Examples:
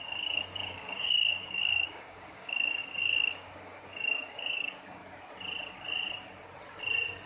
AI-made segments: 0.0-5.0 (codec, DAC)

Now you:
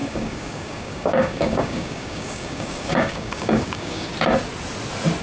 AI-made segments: 0.0-4.1 (codec, DAC)